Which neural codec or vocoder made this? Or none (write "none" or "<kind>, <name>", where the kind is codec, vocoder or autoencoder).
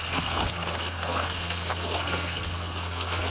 codec, SNAC